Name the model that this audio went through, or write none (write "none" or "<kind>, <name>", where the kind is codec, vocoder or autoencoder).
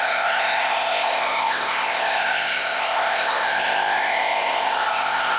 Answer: codec, ZipCodec